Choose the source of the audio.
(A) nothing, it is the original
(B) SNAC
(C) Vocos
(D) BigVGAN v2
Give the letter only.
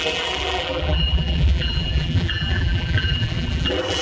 D